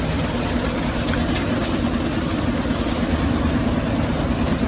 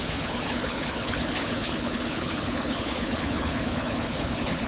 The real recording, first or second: first